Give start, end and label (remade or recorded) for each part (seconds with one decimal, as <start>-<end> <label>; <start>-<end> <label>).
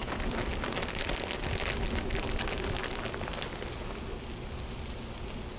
0.0-5.6 recorded